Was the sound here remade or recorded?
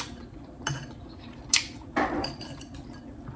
recorded